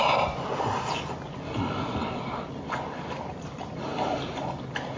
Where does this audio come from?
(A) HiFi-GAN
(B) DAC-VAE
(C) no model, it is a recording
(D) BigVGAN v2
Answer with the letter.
C